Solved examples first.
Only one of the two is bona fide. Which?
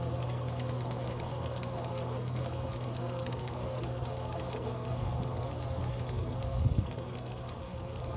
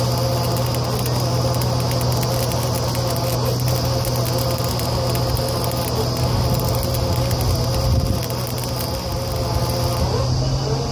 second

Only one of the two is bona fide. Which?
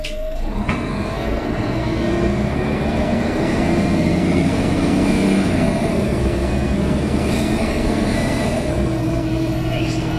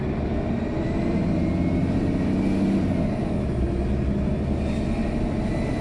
second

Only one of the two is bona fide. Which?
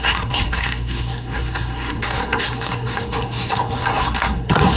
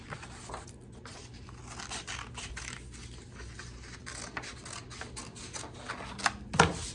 second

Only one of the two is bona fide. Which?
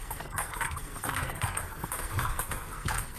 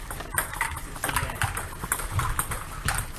second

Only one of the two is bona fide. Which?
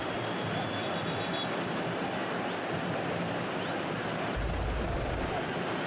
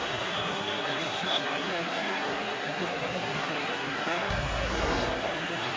first